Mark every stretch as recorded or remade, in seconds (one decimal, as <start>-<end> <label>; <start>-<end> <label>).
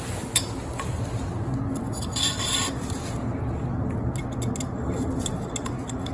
0.0-2.1 recorded; 2.1-3.2 remade; 3.2-6.1 recorded